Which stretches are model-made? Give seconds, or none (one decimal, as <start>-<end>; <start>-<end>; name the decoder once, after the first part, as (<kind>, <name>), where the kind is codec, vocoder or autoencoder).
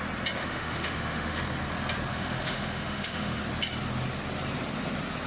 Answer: 0.4-1.4 (autoencoder, DAC-VAE); 2.1-3.4